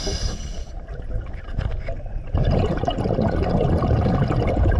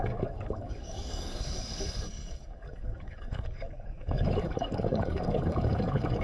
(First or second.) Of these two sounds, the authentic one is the first